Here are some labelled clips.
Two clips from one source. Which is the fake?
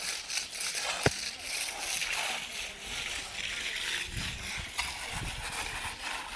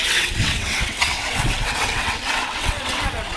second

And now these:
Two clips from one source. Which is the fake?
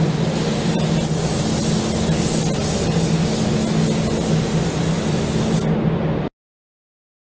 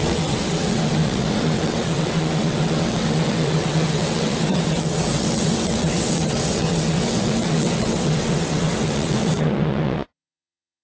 second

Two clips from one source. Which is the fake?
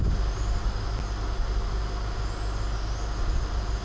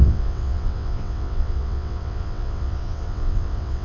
second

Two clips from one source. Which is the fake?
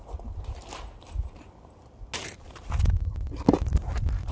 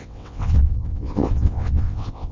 second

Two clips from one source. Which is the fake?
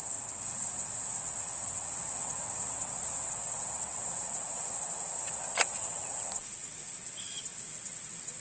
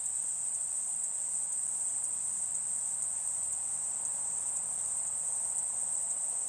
first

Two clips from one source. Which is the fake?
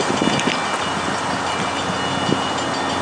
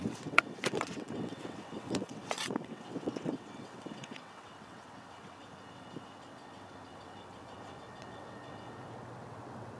second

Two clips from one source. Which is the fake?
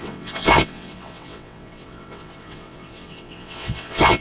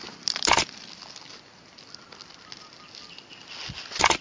first